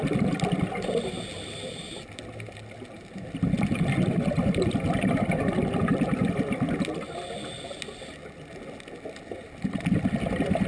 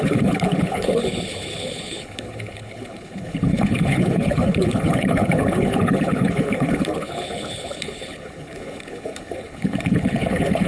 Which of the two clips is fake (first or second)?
second